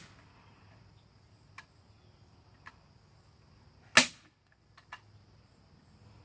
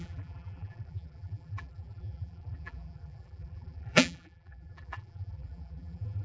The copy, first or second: second